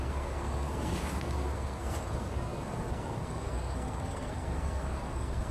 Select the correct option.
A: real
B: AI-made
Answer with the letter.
B